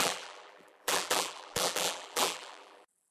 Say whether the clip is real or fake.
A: fake